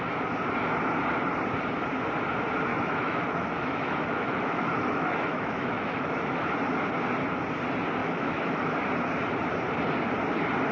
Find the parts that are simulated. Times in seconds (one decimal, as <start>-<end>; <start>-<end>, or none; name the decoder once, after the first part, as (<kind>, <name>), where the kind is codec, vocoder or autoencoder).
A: 2.7-6.4 (autoencoder, DAC-VAE); 8.0-8.7

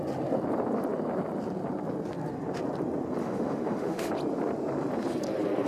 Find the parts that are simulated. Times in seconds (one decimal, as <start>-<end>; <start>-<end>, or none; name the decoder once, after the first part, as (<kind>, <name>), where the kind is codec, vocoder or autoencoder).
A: 3.2-4.1 (autoencoder, DAC-VAE)

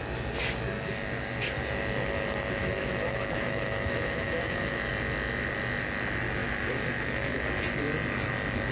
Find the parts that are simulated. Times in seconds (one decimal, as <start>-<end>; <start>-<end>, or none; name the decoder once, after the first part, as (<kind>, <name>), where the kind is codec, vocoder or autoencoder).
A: 2.6-4.9 (autoencoder, DAC-VAE); 6.4-7.4

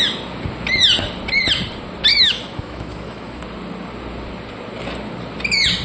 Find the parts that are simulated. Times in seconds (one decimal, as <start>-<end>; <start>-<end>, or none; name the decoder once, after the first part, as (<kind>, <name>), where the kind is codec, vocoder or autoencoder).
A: 2.1-3.4 (autoencoder, DAC-VAE)

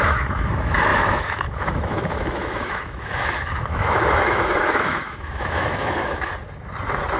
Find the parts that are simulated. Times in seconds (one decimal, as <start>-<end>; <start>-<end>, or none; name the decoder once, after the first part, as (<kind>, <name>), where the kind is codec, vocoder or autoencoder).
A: 0.0-6.3 (autoencoder, DAC-VAE)

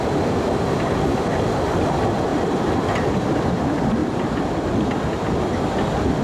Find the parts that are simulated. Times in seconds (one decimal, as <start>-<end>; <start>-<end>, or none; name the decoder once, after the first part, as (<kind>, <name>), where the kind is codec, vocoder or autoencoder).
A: none

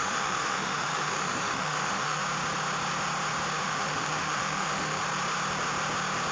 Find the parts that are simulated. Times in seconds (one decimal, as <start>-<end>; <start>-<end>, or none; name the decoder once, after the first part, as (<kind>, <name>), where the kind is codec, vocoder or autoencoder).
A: 0.0-2.2 (autoencoder, DAC-VAE); 3.6-5.0

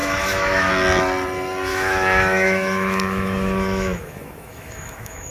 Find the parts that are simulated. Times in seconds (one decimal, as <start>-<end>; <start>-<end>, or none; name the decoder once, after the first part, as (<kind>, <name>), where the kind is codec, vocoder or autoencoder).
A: 0.0-0.7 (autoencoder, DAC-VAE); 1.7-5.3